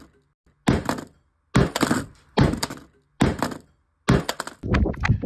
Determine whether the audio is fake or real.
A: real